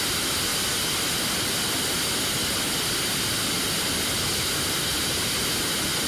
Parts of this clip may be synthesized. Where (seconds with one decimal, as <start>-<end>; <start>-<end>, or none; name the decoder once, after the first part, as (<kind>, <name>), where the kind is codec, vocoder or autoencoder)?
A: none